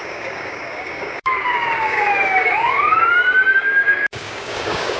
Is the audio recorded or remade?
remade